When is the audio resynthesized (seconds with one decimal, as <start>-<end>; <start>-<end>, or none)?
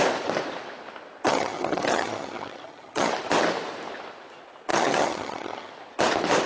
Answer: 1.3-3.1; 4.7-5.7